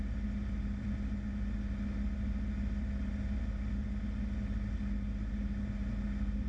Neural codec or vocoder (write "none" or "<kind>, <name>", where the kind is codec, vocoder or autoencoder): none